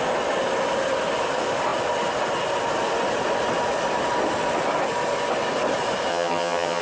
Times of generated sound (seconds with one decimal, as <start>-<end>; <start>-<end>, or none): 6.1-6.8